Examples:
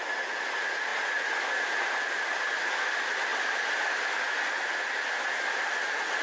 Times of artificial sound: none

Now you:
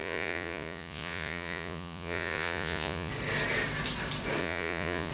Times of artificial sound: 0.0-3.1 (vocoder, Vocos); 4.4-5.1

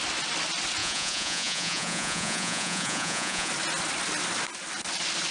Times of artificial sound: 0.8-3.5 (vocoder, Vocos)

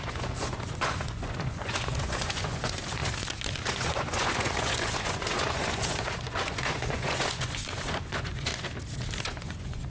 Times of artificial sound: 0.0-3.0 (vocoder, Vocos); 3.7-8.5; 9.2-9.9

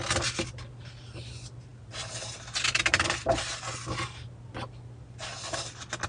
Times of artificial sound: none

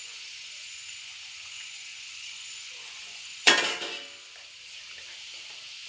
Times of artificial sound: 0.0-3.5 (vocoder, Vocos)

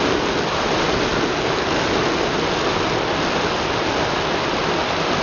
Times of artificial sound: none

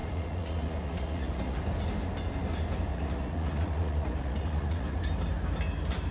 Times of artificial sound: 0.0-1.6 (vocoder, Vocos); 2.9-5.0